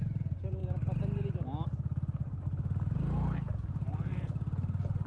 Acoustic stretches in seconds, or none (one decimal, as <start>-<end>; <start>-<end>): 0.0-5.1